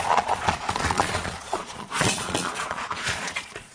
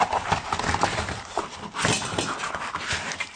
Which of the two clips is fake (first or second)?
first